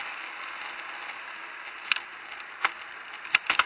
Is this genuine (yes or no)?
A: yes